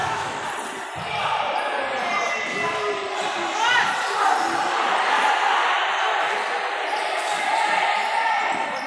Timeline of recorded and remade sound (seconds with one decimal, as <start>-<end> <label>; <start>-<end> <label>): 0.0-0.5 remade; 0.5-8.9 recorded